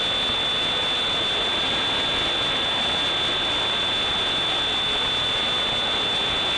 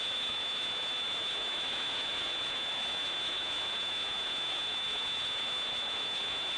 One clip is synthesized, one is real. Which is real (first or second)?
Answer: first